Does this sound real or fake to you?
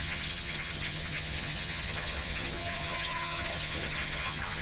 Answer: fake